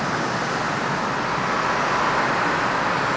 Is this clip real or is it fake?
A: real